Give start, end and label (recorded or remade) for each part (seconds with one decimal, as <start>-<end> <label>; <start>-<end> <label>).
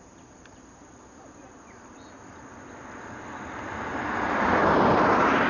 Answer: 0.0-5.5 recorded